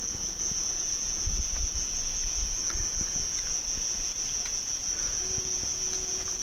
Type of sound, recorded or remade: remade